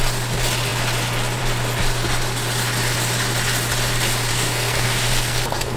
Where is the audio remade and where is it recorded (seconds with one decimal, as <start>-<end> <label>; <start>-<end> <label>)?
0.0-4.3 recorded; 4.3-5.8 remade